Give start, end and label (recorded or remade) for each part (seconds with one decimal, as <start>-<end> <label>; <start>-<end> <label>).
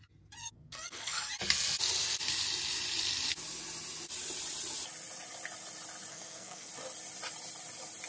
0.0-0.4 recorded; 0.4-1.3 remade; 1.3-6.1 recorded; 6.1-6.7 remade; 6.7-8.1 recorded